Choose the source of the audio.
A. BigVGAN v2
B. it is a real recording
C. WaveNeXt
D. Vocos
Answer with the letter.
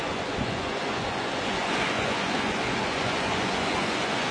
D